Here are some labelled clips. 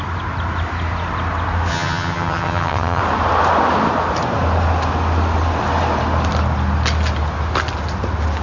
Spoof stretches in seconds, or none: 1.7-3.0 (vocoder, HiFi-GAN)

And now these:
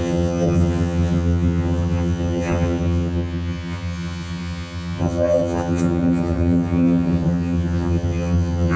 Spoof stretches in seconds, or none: 0.0-8.8 (vocoder, HiFi-GAN)

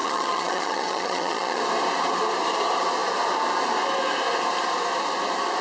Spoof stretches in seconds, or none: 0.0-1.6 (vocoder, HiFi-GAN)

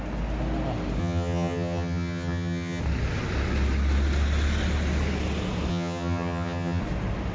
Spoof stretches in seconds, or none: 1.0-2.8 (vocoder, HiFi-GAN); 5.7-6.8

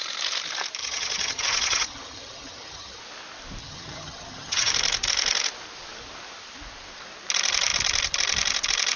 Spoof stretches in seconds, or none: 0.8-3.0 (vocoder, HiFi-GAN); 3.6-4.7